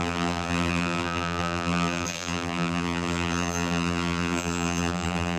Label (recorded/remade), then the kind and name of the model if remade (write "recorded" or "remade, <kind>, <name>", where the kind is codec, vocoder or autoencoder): remade, vocoder, BigVGAN v2